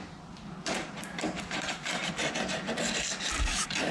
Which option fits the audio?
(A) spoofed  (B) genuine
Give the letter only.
A